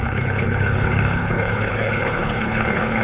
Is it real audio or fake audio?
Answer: fake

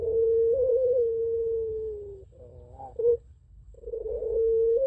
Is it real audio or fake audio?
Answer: fake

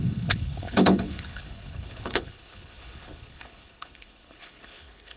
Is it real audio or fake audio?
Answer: fake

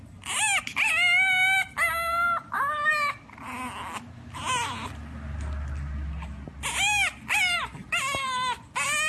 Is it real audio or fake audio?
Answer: real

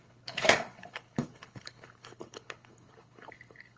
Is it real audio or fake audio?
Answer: fake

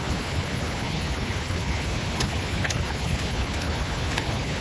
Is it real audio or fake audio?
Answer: fake